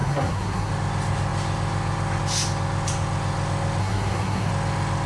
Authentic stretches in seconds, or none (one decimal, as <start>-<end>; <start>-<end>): 0.7-3.8; 4.5-5.1